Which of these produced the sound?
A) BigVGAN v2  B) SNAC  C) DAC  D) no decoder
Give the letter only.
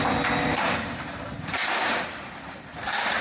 A